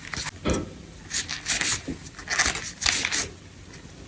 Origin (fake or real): real